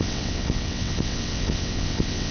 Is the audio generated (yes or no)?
yes